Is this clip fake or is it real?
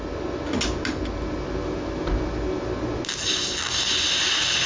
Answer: real